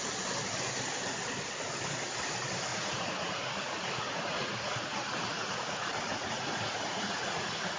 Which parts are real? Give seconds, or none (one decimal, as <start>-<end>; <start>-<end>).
0.0-2.7

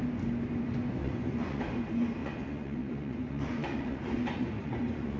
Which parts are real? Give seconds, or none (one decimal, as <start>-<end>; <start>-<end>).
0.0-1.0; 1.6-2.2

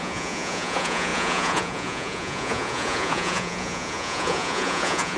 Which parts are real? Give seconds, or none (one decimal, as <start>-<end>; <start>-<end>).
none

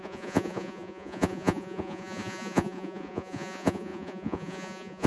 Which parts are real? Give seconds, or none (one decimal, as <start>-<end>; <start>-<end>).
none

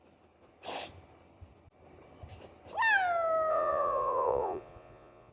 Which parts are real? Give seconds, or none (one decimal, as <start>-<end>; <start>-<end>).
0.0-3.5

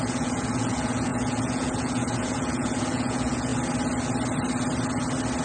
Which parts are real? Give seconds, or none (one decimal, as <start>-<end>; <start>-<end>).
3.5-5.4

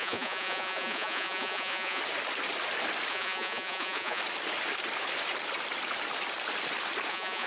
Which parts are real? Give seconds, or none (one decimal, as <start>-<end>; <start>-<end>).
2.0-3.1; 4.2-7.1